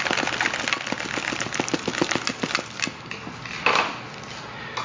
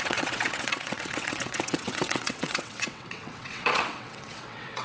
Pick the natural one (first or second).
first